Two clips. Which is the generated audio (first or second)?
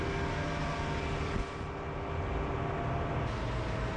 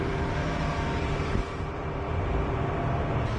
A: second